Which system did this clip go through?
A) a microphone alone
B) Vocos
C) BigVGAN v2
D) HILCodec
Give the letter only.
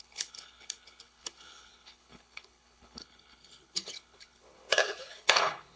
D